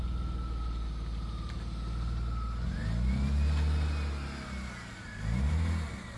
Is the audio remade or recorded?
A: recorded